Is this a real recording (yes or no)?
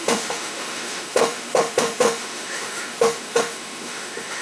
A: no